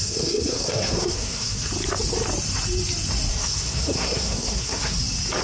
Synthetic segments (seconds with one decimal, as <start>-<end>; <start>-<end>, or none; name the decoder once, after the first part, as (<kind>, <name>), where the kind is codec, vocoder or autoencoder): 0.0-1.7 (codec, SNAC); 3.3-5.0